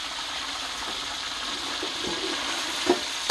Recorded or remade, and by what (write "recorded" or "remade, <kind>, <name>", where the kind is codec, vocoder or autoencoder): recorded